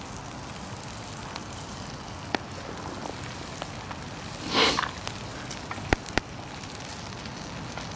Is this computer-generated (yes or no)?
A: no